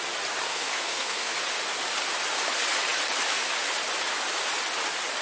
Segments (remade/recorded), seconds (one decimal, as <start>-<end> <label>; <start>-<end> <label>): 0.0-0.5 recorded; 0.5-1.3 remade; 1.3-5.2 recorded